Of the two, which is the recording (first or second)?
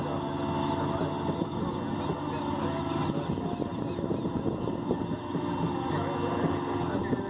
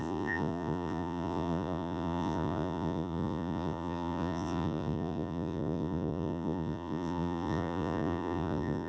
first